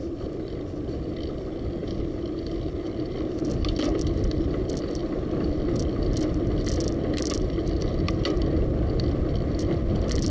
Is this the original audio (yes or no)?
yes